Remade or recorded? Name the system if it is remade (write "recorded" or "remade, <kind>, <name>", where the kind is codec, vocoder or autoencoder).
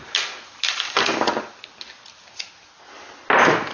recorded